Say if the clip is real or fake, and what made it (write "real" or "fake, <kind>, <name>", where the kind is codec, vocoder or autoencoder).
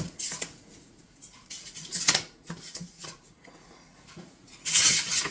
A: fake, vocoder, Vocos